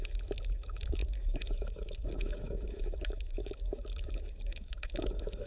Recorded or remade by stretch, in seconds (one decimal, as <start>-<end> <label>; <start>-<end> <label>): 0.0-5.5 remade